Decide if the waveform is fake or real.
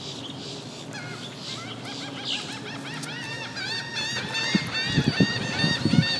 real